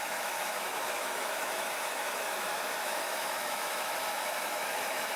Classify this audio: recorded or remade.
remade